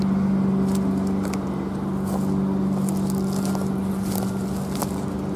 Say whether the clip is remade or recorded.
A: recorded